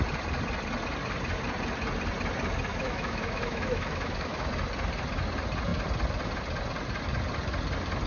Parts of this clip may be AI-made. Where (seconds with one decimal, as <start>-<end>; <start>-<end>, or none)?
2.7-4.5